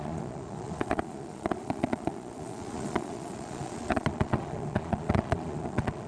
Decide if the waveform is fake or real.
fake